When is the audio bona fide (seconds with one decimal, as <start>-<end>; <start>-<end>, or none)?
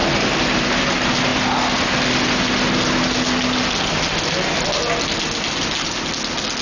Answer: 0.0-6.6